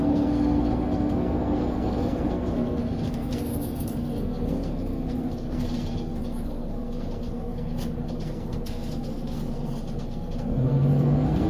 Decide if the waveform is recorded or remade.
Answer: remade